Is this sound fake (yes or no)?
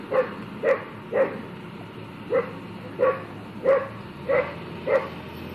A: no